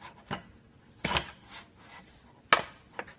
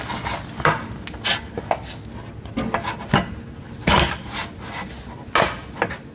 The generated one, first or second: first